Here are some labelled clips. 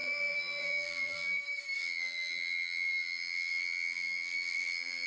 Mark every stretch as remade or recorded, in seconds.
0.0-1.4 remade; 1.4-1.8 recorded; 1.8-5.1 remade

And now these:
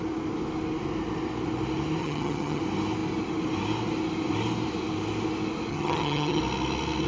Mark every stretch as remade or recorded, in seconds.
0.0-2.0 recorded; 2.0-2.6 remade; 2.6-5.7 recorded; 5.7-6.4 remade; 6.4-7.1 recorded

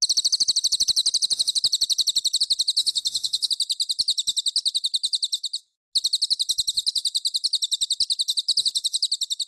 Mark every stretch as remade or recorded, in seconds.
0.0-2.8 recorded; 2.8-3.5 remade; 3.5-9.5 recorded

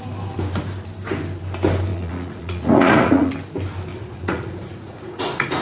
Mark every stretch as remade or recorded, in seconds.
0.0-1.9 recorded; 1.9-3.3 remade; 3.3-3.9 recorded; 3.9-5.6 remade

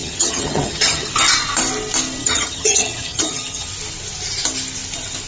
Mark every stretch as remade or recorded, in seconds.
0.0-1.1 remade; 1.1-2.2 recorded; 2.2-3.7 remade; 3.7-5.3 recorded